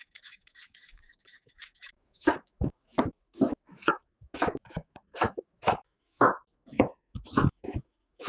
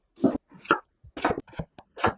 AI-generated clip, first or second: first